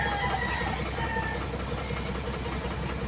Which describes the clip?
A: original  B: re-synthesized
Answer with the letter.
A